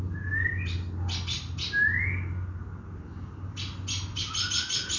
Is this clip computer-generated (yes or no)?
no